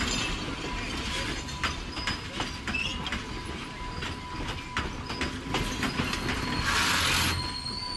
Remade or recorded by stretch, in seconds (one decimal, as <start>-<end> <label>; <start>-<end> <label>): 0.0-8.0 recorded